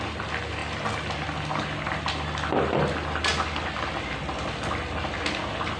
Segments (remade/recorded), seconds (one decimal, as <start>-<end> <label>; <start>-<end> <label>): 0.0-5.8 recorded